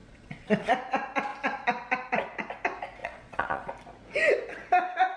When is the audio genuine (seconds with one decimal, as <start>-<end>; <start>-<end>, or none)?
0.7-3.0; 3.7-5.2